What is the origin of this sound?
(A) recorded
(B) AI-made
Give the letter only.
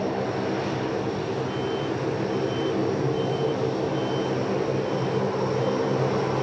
A